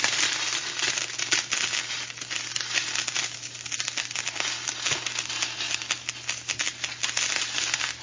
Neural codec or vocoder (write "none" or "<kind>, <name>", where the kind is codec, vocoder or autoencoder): none